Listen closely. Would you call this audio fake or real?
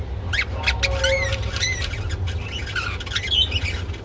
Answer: real